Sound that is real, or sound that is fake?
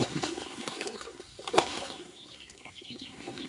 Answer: fake